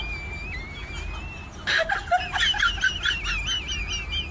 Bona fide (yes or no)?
yes